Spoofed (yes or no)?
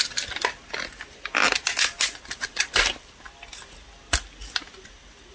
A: no